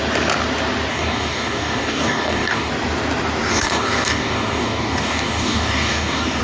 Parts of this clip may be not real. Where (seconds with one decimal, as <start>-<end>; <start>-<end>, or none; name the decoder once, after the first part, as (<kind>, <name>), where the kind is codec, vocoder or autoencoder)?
0.9-2.7 (codec, DAC); 3.5-6.4